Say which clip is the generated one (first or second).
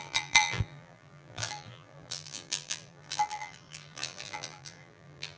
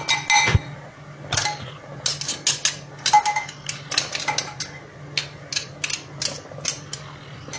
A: first